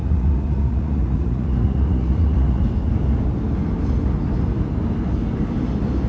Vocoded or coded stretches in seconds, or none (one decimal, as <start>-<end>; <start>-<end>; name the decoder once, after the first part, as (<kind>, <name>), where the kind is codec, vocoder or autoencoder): 0.0-2.6 (vocoder, Vocos)